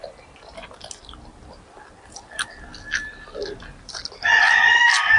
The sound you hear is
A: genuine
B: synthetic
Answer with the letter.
A